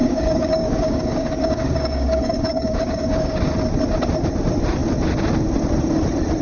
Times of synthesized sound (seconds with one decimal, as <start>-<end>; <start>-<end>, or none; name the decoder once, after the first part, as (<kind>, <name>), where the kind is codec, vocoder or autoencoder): 0.0-3.4 (codec, DAC)